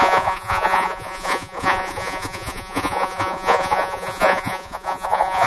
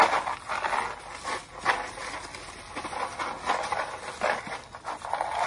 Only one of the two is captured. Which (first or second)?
second